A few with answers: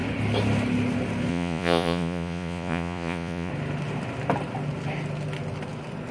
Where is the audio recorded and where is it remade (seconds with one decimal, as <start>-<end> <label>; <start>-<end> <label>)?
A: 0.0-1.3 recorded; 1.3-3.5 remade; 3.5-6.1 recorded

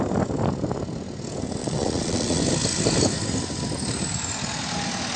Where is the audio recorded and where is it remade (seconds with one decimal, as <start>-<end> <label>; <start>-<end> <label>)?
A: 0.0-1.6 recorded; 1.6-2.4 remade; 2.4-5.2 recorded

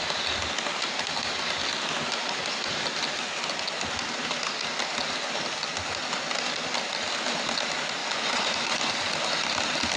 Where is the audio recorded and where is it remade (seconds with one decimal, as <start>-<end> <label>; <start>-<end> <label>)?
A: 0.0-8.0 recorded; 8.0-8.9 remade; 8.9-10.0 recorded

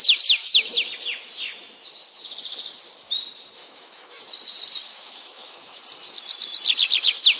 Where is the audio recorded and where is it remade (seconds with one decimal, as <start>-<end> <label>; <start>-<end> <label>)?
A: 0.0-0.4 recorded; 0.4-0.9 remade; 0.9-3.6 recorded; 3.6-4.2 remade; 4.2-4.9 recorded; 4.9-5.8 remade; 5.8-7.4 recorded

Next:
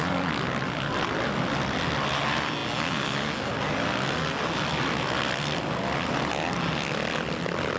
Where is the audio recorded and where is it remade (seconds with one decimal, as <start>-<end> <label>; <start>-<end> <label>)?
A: 0.0-7.8 recorded

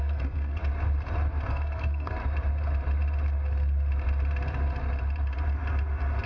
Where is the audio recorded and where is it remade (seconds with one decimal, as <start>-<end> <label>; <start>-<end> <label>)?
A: 0.0-0.6 remade; 0.6-1.5 recorded; 1.5-2.2 remade; 2.2-6.3 recorded

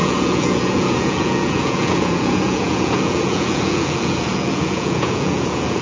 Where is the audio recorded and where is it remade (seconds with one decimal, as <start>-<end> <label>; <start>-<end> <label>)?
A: 0.0-5.8 remade